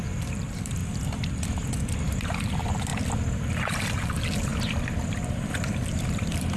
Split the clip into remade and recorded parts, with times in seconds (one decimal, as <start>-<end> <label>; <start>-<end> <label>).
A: 0.0-0.8 remade; 0.8-2.1 recorded; 2.1-2.9 remade; 2.9-3.4 recorded; 3.4-4.5 remade; 4.5-5.5 recorded; 5.5-6.6 remade